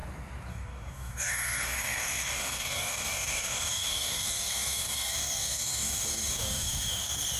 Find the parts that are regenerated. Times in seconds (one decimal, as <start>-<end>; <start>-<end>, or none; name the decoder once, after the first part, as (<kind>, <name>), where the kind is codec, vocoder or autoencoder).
0.5-7.4 (codec, DAC)